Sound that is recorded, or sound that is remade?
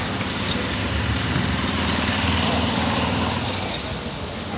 recorded